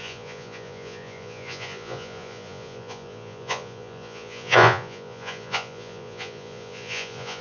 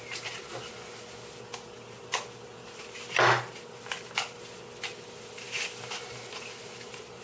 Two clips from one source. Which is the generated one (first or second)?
first